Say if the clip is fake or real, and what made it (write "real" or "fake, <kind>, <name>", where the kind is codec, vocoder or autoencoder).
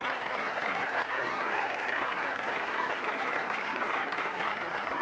fake, codec, SNAC